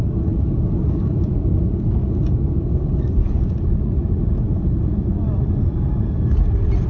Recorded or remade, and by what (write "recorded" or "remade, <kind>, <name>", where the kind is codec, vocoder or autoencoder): recorded